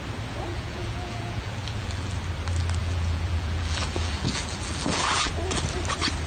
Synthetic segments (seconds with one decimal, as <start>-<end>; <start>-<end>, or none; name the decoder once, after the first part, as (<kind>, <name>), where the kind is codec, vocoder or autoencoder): 0.5-2.2 (vocoder, BigVGAN v2); 2.8-5.3